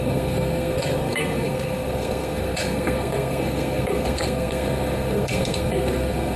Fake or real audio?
fake